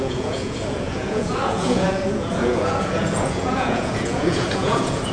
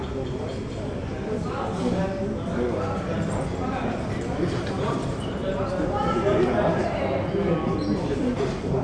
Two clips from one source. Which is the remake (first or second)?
first